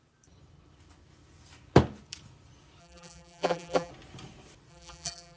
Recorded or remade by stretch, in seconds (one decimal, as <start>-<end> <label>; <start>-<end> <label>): 0.0-2.8 recorded; 2.8-3.9 remade; 3.9-4.7 recorded; 4.7-5.4 remade

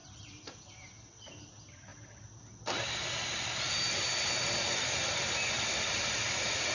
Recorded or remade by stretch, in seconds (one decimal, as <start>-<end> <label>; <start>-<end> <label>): 0.0-1.9 remade; 1.9-5.9 recorded; 5.9-6.7 remade

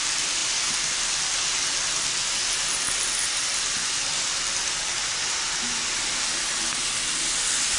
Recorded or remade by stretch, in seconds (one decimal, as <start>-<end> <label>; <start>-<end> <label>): 0.0-7.8 recorded

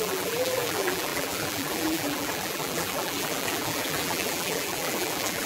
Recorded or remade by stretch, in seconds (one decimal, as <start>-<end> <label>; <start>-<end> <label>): 0.0-5.5 remade

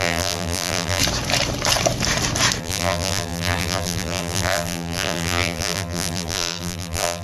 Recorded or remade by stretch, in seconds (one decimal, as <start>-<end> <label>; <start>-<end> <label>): 0.0-1.0 remade; 1.0-2.6 recorded; 2.6-7.2 remade

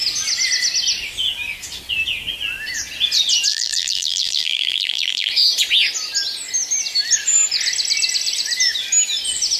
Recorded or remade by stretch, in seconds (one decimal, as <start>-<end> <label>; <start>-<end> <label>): 0.0-3.5 recorded; 3.5-5.3 remade; 5.3-9.6 recorded